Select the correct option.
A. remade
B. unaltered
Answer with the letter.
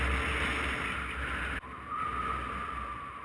B